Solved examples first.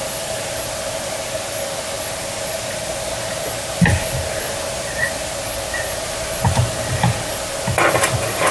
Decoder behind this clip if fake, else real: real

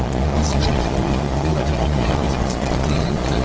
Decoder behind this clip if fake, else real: fake, vocoder, Vocos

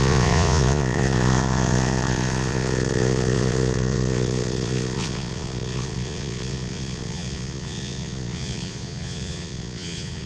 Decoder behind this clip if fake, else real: fake, vocoder, Vocos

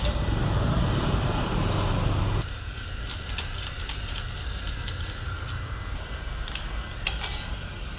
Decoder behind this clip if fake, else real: real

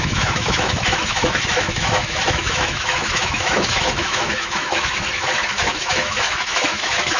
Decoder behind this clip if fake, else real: fake, autoencoder, DAC-VAE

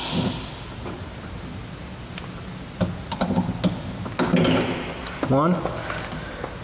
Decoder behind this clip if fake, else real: real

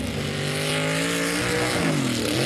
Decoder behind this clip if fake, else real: real